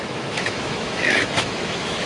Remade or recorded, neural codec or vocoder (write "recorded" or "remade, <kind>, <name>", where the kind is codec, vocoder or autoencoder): remade, autoencoder, DAC-VAE